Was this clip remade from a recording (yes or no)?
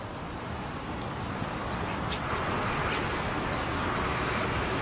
no